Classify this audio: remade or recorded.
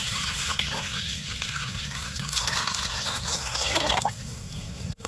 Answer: remade